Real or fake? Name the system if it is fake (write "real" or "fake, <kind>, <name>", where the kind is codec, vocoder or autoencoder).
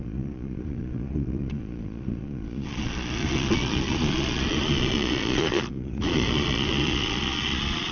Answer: fake, vocoder, Vocos